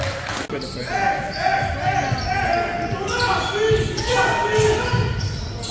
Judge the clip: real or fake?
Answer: real